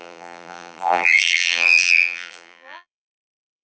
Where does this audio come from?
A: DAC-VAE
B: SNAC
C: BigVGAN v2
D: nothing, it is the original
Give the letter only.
C